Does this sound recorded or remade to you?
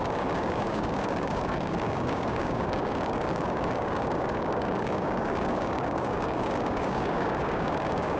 remade